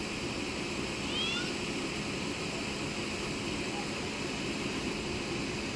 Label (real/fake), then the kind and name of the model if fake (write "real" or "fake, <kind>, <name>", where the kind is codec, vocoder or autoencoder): real